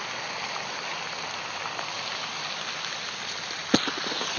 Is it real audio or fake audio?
real